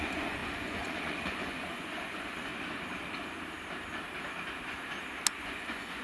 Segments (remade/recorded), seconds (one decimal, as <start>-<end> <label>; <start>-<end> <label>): 0.0-2.5 remade; 2.5-5.4 recorded; 5.4-6.0 remade